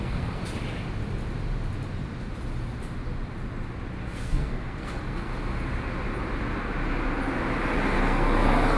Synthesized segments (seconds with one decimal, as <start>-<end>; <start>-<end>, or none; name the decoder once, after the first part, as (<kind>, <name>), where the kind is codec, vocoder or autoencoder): 0.0-0.4 (codec, SNAC); 4.0-5.3; 8.0-8.8